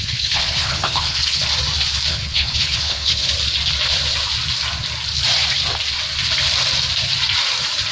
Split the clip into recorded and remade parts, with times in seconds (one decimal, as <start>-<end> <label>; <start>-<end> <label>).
0.0-1.4 remade; 1.4-2.1 recorded; 2.1-3.3 remade; 3.3-7.9 recorded